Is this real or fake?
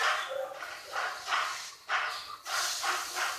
real